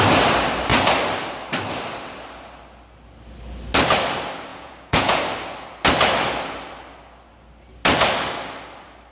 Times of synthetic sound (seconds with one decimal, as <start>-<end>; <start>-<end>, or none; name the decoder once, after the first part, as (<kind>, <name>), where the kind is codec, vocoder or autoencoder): 4.5-5.2 (vocoder, Vocos)